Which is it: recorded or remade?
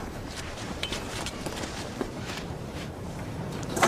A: remade